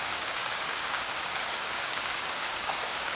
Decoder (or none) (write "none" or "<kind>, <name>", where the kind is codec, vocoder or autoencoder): codec, DAC